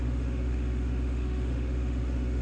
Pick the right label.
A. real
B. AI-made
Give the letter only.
B